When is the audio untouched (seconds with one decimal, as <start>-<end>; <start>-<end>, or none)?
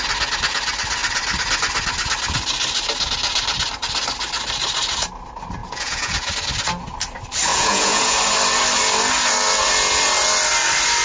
0.0-5.6; 6.3-7.5; 8.2-11.0